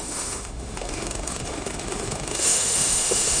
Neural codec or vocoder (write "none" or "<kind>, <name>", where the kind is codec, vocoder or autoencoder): autoencoder, DAC-VAE